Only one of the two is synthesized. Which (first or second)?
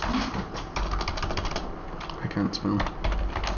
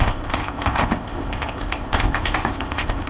second